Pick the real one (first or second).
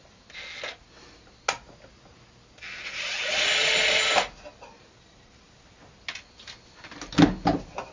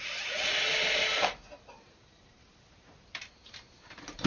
first